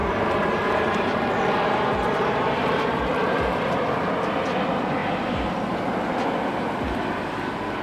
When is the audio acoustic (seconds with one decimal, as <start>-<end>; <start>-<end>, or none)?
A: 3.0-7.8

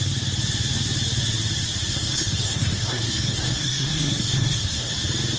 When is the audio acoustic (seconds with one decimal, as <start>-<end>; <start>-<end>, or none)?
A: 0.0-1.9; 4.9-5.4